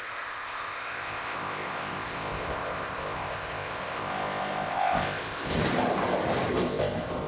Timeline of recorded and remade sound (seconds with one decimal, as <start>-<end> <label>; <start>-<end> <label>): 0.0-5.6 remade; 5.6-6.5 recorded; 6.5-7.3 remade